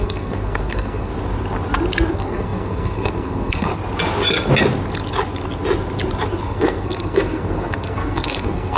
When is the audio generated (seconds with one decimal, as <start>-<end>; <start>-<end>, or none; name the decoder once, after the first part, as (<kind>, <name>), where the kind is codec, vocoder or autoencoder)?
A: 0.0-1.1 (codec, SNAC); 2.1-3.7; 6.4-8.8